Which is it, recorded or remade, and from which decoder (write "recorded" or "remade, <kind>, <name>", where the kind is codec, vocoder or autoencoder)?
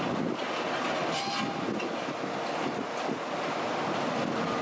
recorded